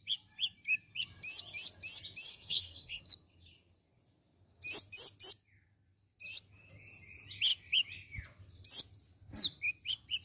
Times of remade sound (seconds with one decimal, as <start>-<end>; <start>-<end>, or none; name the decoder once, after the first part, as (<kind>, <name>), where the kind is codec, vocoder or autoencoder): 2.3-3.0 (codec, SNAC)